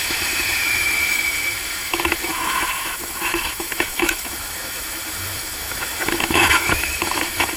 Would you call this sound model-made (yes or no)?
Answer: yes